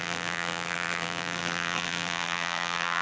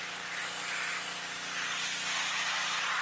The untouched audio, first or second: second